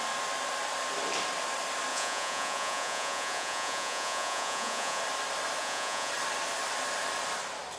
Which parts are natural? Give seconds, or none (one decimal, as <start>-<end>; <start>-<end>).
0.0-1.9; 5.0-5.6; 6.1-7.8